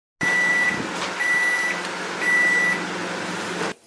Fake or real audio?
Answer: real